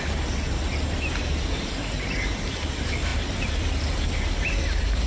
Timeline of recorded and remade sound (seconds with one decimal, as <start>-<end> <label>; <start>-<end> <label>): 0.0-5.1 recorded